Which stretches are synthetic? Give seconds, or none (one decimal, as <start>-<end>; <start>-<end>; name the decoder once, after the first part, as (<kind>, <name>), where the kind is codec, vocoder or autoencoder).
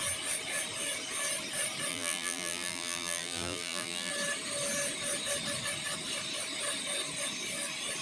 1.9-4.1 (vocoder, BigVGAN v2)